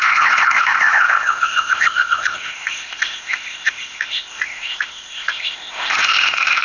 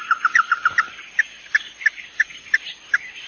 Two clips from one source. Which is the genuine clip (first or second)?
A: second